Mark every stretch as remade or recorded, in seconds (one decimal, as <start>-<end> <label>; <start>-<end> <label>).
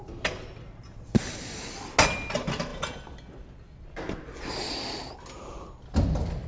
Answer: 0.0-6.5 recorded